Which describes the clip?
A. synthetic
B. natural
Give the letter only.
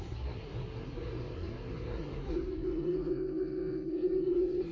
A